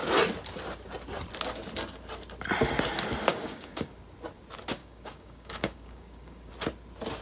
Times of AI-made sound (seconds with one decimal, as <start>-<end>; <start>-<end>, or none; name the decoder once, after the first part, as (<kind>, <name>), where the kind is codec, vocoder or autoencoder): 3.3-3.9 (codec, DAC); 4.8-6.5